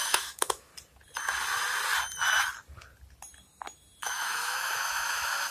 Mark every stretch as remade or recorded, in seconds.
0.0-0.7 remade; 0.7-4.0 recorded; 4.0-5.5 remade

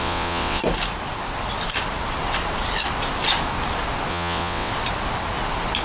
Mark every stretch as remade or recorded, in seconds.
0.0-0.6 remade; 0.6-4.1 recorded; 4.1-4.7 remade; 4.7-5.8 recorded

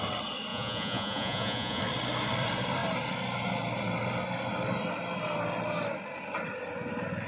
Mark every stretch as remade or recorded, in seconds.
0.0-0.5 recorded; 0.5-1.8 remade; 1.8-7.3 recorded

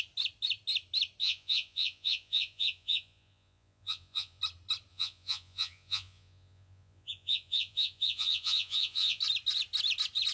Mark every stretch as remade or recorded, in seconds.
0.0-1.2 recorded; 1.2-4.4 remade; 4.4-4.9 recorded; 4.9-9.2 remade; 9.2-10.3 recorded

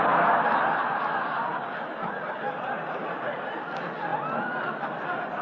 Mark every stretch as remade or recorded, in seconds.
0.0-5.4 recorded

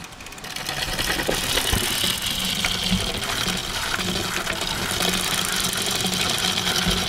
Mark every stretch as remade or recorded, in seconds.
0.0-7.1 recorded